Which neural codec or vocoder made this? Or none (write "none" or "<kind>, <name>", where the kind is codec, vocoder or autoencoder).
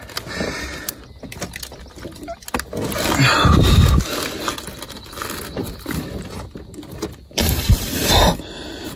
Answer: none